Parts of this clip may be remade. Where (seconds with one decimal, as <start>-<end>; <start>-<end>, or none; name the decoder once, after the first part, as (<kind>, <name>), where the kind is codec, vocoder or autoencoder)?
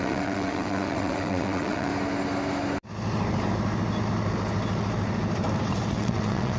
0.0-1.9 (vocoder, WaveNeXt); 5.9-6.6